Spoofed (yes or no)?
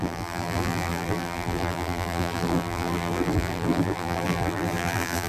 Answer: yes